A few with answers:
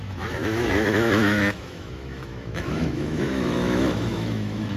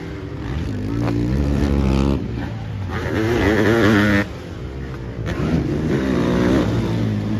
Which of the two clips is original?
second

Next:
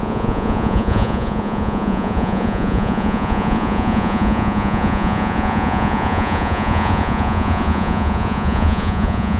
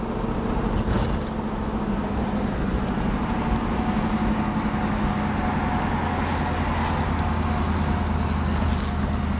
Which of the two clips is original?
second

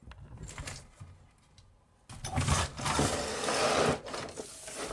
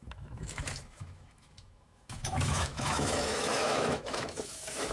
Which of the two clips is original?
first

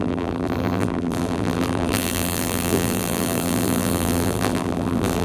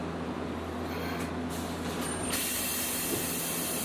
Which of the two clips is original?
second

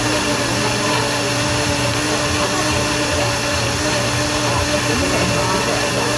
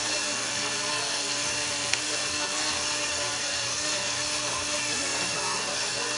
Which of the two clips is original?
first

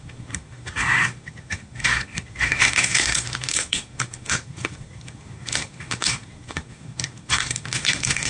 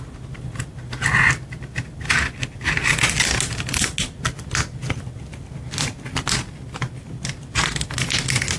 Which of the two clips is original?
second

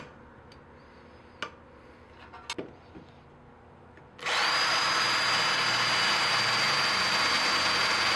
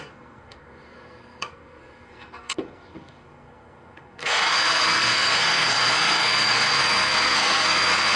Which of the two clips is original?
first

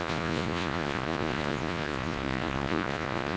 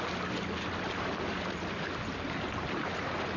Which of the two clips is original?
second